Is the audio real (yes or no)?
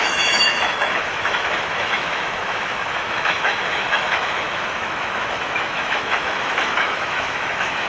no